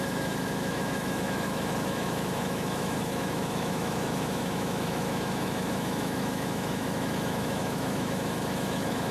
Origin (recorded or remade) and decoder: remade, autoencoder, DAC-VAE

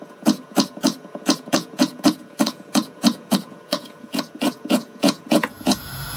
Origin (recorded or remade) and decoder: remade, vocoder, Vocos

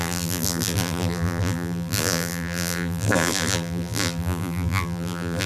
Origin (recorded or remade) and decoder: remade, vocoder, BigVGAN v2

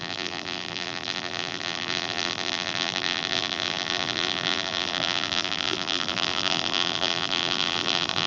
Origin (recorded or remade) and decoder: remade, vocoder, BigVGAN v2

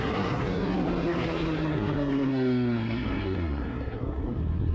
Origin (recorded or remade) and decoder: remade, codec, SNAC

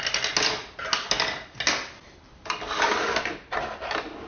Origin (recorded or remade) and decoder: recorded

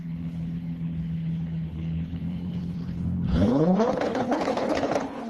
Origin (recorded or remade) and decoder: remade, codec, HILCodec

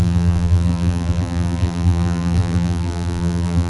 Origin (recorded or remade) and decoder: remade, vocoder, BigVGAN v2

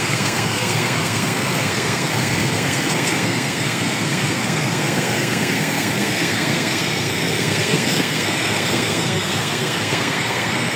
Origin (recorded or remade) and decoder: remade, codec, SNAC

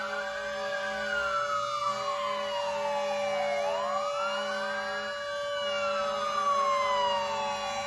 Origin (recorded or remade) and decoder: recorded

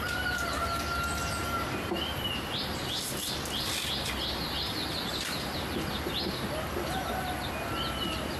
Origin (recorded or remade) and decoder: recorded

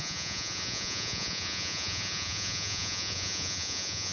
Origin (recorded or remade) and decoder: remade, vocoder, Vocos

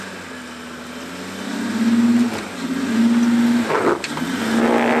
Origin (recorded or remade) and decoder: recorded